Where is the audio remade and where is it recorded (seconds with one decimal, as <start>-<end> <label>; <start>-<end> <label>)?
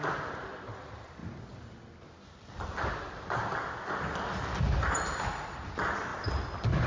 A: 0.0-6.9 recorded